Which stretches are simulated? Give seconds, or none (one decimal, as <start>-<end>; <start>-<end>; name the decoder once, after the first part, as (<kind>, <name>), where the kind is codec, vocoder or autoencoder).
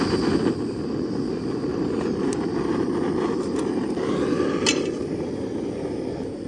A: none